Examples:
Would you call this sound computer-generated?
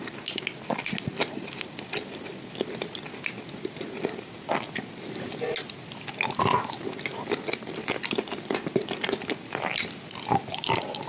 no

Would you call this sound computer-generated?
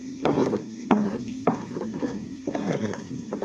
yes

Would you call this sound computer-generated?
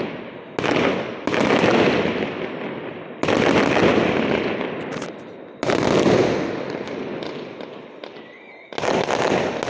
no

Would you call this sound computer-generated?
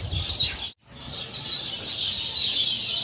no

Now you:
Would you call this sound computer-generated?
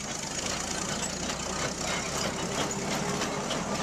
no